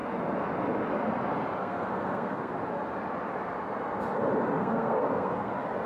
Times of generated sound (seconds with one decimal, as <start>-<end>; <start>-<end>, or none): 1.6-2.5; 4.6-5.5